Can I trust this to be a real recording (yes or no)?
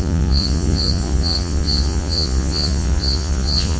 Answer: no